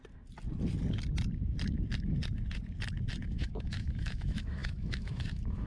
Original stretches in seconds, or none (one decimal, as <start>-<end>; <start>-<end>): 0.0-3.2